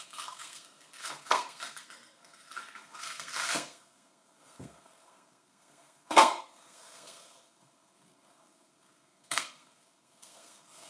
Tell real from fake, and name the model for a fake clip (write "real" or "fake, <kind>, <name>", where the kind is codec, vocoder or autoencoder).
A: fake, codec, SNAC